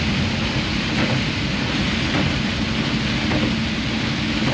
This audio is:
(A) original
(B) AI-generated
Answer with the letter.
A